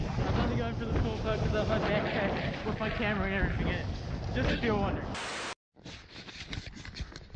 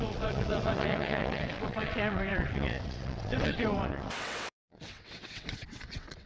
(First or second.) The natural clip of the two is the first